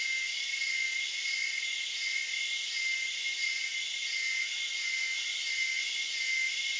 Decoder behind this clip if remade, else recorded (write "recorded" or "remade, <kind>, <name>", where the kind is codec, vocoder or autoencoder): recorded